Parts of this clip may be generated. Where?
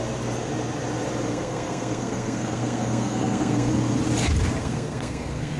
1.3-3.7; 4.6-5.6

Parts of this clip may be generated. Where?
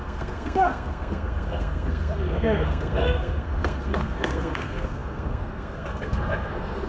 0.0-6.9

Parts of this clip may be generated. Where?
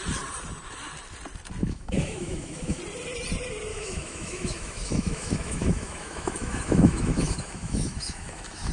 1.6-2.8; 3.7-8.7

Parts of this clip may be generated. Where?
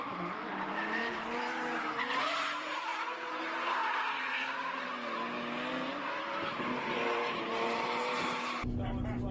0.0-3.8; 6.4-9.3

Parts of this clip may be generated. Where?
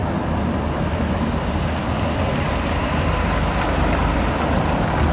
1.1-5.1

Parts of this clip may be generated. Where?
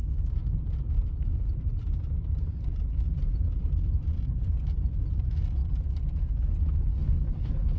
6.9-7.8